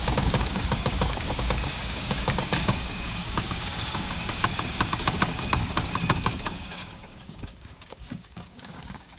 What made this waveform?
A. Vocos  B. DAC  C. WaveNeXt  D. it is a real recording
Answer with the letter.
B